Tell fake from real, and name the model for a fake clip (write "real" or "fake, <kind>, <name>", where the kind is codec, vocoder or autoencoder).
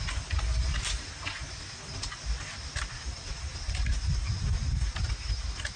real